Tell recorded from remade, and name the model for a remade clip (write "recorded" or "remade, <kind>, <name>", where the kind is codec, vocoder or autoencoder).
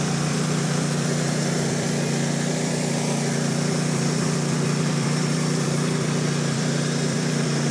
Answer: remade, vocoder, BigVGAN v2